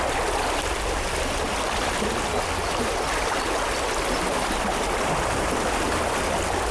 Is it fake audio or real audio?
real